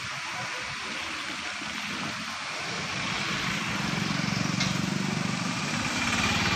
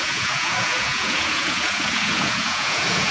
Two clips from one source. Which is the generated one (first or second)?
second